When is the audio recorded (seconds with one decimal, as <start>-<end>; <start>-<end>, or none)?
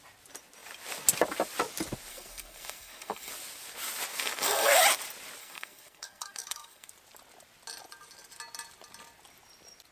0.0-2.1; 3.3-4.1; 4.8-5.4; 6.9-9.9